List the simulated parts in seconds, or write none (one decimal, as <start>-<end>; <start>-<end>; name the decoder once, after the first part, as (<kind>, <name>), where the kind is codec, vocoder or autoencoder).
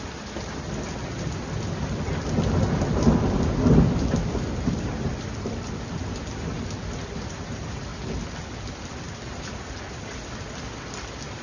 none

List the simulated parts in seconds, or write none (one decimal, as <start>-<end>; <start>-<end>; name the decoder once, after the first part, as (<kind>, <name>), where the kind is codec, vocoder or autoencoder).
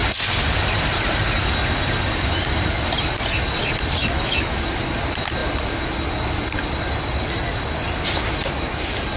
4.0-4.6 (autoencoder, DAC-VAE)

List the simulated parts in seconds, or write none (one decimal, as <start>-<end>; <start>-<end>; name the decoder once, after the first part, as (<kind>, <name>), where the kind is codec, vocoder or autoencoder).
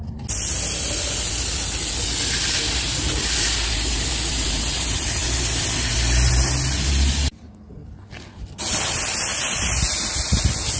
none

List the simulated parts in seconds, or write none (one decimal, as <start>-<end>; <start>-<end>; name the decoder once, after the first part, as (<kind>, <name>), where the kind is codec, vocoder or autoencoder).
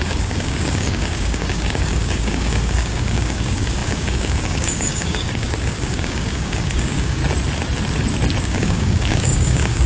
0.0-7.2 (codec, DAC); 8.4-9.9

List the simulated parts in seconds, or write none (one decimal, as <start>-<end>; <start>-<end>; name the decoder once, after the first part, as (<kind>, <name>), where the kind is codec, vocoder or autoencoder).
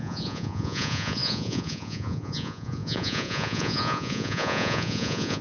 0.0-5.4 (vocoder, Vocos)